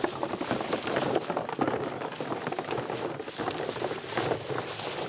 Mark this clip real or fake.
real